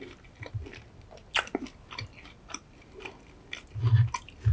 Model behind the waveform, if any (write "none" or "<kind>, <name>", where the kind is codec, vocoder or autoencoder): none